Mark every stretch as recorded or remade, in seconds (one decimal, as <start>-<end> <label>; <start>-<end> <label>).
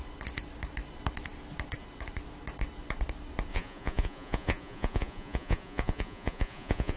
0.0-3.5 recorded; 3.5-7.0 remade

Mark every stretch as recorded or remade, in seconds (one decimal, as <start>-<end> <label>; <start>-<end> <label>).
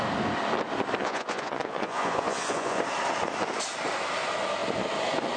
0.0-1.0 recorded; 1.0-2.8 remade; 2.8-5.4 recorded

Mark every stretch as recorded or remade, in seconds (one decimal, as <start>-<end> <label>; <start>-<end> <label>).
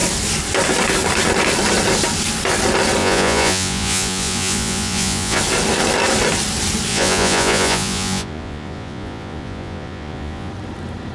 0.0-3.0 recorded; 3.0-5.4 remade; 5.4-6.9 recorded; 6.9-10.5 remade; 10.5-11.1 recorded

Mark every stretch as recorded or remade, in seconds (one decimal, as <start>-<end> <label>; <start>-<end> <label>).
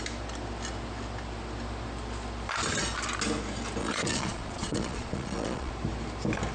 0.0-3.8 recorded; 3.8-5.7 remade; 5.7-6.5 recorded